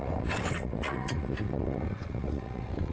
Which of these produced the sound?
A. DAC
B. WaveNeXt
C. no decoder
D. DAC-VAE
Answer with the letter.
B